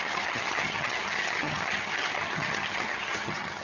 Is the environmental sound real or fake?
fake